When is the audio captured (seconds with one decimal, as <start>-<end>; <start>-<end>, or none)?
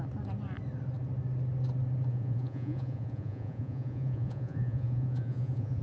0.0-2.1